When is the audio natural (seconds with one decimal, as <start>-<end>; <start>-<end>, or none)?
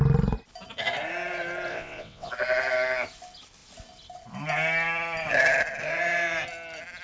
0.0-1.7; 2.3-7.0